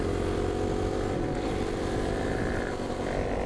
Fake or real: real